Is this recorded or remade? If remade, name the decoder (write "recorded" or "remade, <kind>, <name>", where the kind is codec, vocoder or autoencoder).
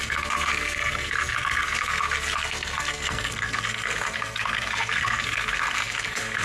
remade, codec, SNAC